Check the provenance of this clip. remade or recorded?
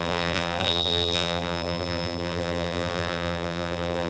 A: remade